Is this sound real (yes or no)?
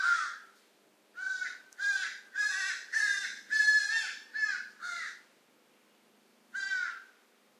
yes